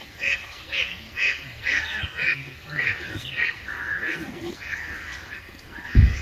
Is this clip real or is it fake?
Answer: fake